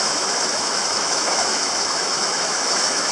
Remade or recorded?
remade